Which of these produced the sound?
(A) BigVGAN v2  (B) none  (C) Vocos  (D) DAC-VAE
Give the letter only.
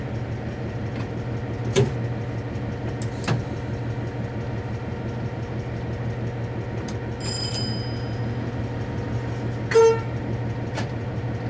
B